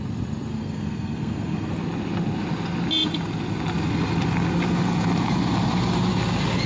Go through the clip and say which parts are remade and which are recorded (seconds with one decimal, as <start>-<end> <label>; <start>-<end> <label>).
0.0-0.5 recorded; 0.5-1.7 remade; 1.7-6.7 recorded